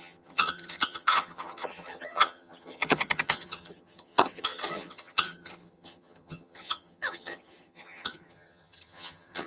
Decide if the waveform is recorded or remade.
remade